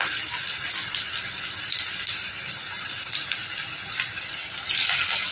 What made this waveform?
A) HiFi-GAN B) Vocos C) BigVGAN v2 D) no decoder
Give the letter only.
D